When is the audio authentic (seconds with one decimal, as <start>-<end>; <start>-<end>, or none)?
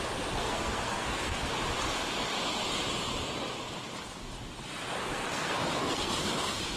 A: 0.0-0.4; 1.5-5.0; 6.1-6.8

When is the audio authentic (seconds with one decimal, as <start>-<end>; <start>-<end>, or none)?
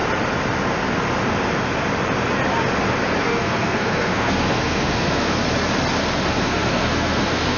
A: 0.0-3.2; 5.4-6.3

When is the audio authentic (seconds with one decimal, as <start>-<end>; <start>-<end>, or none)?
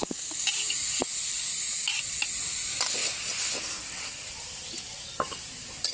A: 0.0-5.9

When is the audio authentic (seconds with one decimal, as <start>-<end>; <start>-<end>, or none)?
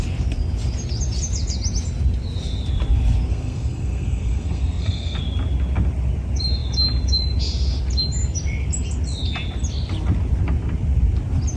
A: 0.0-3.3; 5.2-11.6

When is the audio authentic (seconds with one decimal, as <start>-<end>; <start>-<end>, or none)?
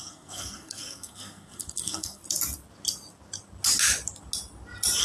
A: 2.2-5.0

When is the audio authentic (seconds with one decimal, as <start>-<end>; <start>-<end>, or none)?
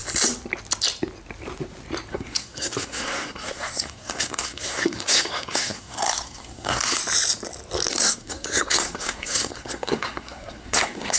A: 0.0-2.1; 7.0-7.9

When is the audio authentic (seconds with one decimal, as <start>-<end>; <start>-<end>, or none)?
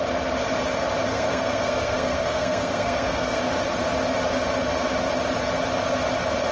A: 0.0-1.1; 3.4-6.5